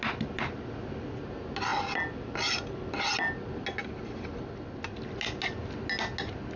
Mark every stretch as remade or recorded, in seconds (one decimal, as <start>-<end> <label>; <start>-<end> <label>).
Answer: 0.0-6.6 recorded